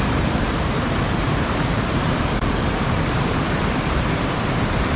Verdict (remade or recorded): remade